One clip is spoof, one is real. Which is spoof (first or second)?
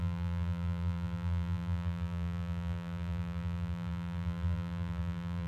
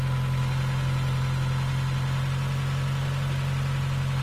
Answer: first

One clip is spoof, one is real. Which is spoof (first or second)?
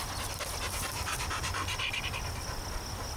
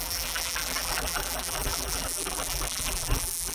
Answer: second